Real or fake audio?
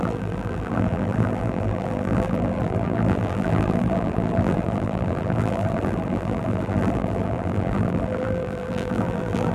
fake